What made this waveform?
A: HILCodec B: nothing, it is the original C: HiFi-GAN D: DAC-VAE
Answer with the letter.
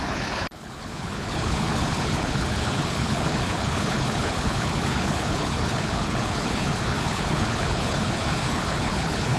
A